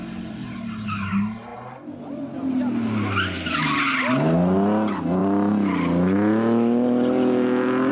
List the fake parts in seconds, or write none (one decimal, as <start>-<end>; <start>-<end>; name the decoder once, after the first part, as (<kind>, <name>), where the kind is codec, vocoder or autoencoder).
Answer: none